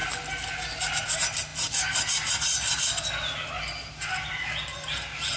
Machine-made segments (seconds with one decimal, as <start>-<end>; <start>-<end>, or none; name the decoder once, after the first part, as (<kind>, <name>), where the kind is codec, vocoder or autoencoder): none